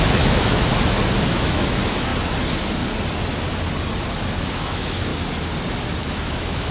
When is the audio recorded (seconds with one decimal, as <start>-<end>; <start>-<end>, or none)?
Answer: 0.7-1.3; 2.1-4.5; 5.1-6.0